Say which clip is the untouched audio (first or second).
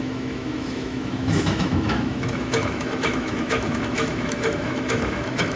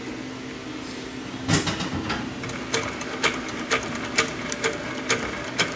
second